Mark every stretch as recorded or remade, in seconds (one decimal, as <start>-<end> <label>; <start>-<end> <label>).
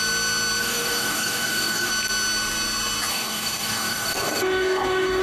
0.0-0.6 recorded; 0.6-1.9 remade; 1.9-3.1 recorded; 3.1-5.2 remade